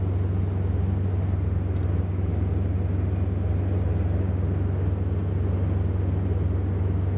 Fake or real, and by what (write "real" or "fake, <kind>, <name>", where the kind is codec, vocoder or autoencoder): real